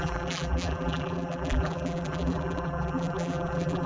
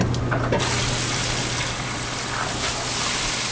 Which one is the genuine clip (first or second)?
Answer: second